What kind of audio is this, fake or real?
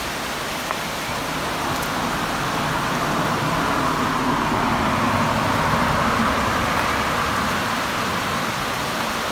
real